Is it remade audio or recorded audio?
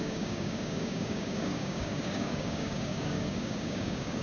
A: remade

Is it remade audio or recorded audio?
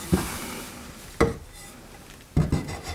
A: recorded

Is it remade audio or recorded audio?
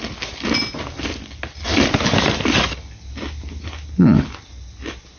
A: recorded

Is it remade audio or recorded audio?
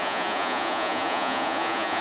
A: remade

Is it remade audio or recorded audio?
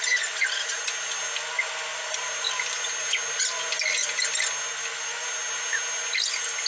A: recorded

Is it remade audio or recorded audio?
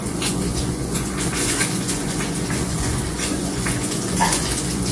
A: remade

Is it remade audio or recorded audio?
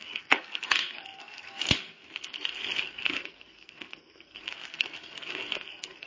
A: remade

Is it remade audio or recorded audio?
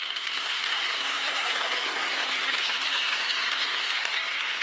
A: remade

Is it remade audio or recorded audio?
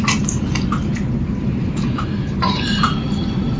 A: recorded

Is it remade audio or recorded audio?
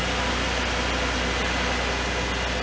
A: recorded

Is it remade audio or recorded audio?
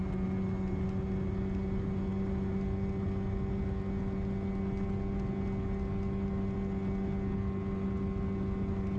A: recorded